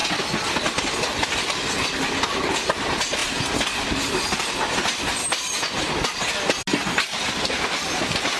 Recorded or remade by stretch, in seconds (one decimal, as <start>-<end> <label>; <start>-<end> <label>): 0.0-8.4 recorded